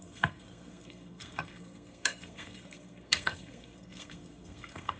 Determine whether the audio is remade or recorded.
remade